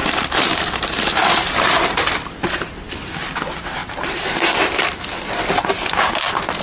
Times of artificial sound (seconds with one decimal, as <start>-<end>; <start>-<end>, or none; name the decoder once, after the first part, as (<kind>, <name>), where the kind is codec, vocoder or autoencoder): 0.0-2.1 (vocoder, BigVGAN v2); 3.8-6.1